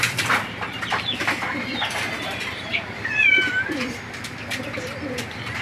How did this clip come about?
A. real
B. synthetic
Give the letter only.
B